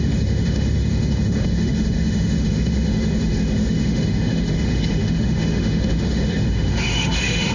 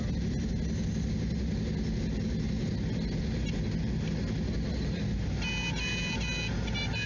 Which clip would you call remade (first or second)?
first